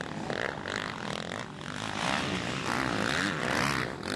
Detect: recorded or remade recorded